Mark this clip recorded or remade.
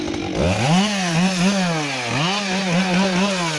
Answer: recorded